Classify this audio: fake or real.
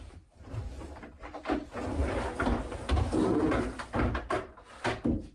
real